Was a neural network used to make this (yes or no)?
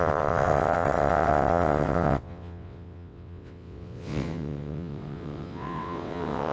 yes